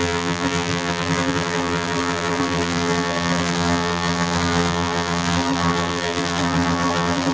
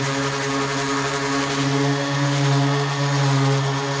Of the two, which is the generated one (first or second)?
first